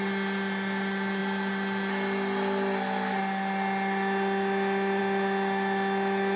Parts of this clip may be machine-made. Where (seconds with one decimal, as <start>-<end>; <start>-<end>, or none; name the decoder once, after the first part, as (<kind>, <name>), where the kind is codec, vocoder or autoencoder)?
none